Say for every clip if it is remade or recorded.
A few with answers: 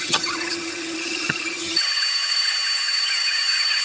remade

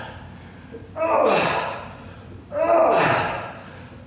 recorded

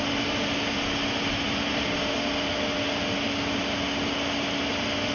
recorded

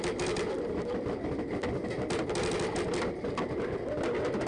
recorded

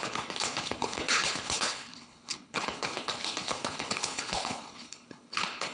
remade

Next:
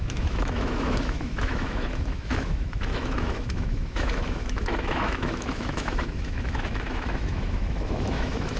remade